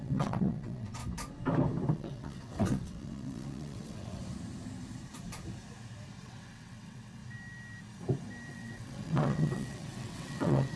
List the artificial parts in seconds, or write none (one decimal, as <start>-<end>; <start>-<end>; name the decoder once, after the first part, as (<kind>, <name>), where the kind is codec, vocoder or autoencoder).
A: 0.0-1.0 (vocoder, WaveNeXt); 1.9-4.2; 6.2-7.2; 8.5-10.8